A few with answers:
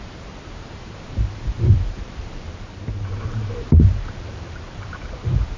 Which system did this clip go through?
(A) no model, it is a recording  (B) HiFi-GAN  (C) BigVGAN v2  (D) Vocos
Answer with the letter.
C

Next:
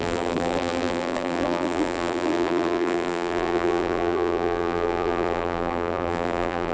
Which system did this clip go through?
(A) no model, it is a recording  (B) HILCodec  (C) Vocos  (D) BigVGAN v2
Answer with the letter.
D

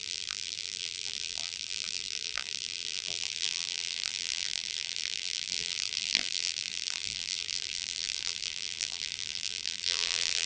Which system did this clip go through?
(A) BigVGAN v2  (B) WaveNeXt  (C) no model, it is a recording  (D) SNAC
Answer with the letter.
A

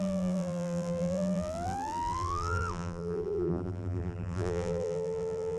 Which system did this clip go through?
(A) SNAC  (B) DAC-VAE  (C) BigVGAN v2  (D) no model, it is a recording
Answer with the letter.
C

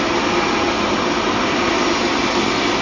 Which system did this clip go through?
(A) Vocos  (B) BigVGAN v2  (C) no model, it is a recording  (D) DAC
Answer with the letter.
C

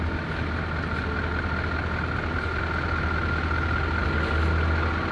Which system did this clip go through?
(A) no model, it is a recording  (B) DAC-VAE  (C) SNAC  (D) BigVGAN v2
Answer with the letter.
A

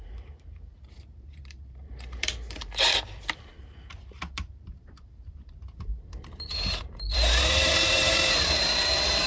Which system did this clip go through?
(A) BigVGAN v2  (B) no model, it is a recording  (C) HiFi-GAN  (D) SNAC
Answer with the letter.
A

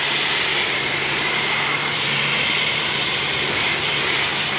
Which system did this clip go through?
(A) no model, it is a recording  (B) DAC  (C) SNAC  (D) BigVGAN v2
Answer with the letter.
D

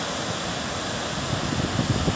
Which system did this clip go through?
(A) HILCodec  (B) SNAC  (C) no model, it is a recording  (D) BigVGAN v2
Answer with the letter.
C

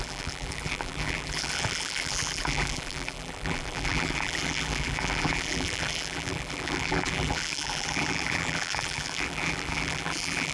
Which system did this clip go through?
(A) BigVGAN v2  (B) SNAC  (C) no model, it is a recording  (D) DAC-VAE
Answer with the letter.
A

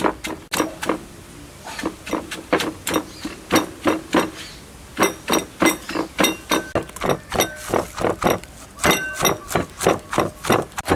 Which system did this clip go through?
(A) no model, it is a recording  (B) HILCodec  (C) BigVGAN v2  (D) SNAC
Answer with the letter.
A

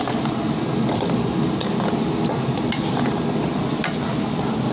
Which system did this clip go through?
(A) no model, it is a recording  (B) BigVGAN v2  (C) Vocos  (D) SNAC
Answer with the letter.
A